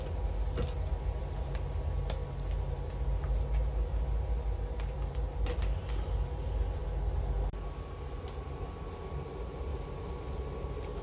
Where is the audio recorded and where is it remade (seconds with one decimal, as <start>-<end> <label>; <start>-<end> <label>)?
0.0-9.7 recorded; 9.7-10.4 remade; 10.4-11.0 recorded